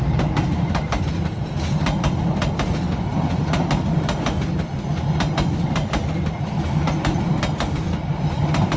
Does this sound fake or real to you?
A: real